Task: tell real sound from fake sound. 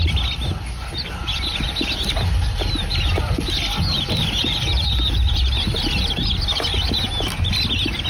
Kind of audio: real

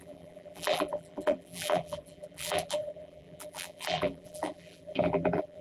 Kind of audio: fake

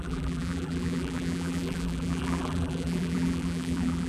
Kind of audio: fake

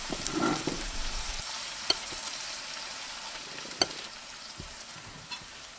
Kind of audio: fake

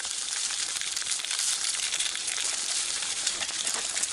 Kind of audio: fake